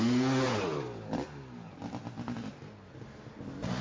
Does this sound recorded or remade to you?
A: recorded